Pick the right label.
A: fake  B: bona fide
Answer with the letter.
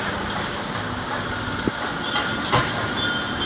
B